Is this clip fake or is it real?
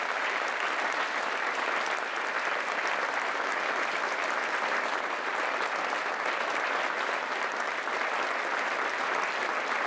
real